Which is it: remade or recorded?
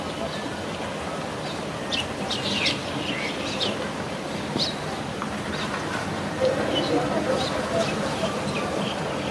recorded